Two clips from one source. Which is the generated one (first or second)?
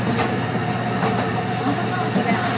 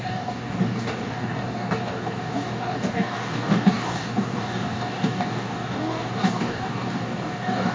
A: second